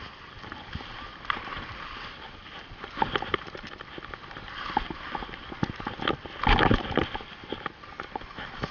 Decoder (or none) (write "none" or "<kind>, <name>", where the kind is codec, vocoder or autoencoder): none